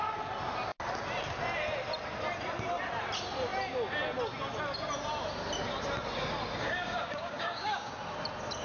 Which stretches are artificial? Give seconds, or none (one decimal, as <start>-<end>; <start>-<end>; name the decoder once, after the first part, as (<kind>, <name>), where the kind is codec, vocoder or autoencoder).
6.6-7.9 (codec, DAC)